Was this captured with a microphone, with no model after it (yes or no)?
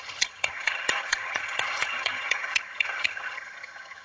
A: no